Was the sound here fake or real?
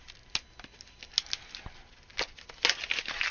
real